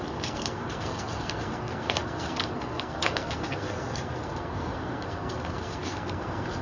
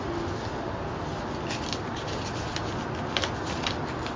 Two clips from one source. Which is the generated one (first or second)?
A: first